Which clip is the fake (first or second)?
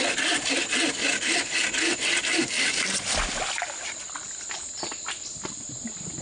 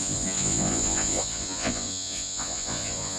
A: second